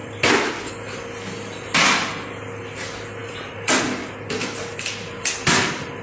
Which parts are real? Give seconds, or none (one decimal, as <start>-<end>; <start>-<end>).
0.7-3.2; 3.8-6.0